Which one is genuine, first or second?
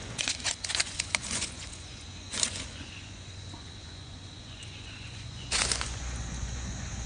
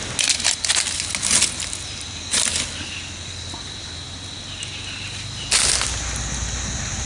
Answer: second